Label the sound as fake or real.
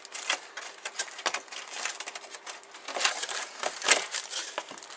real